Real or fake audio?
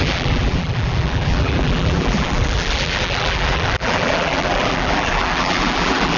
fake